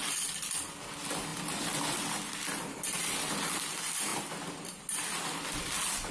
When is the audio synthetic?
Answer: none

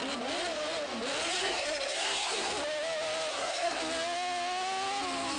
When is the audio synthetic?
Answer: 1.4-2.5 (codec, SNAC); 3.3-3.8

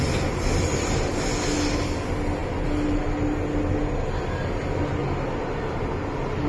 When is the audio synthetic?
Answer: none

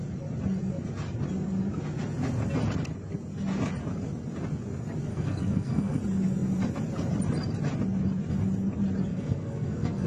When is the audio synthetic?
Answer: 5.1-6.0 (codec, SNAC); 9.1-10.1